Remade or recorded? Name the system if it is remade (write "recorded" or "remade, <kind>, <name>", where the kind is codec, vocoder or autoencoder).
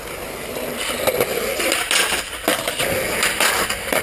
recorded